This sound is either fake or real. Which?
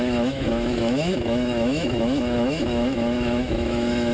fake